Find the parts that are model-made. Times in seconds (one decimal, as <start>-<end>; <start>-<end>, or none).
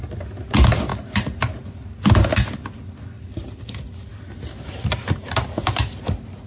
none